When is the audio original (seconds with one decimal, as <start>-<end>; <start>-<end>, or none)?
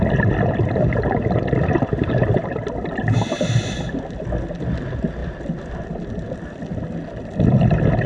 0.0-8.1